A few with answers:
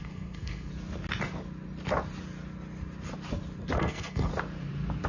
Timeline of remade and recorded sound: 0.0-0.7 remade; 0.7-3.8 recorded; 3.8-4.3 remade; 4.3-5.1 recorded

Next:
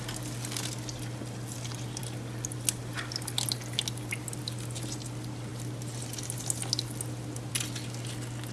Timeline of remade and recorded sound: 0.0-8.5 recorded